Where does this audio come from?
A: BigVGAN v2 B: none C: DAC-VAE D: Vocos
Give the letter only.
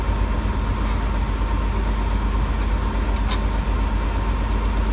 B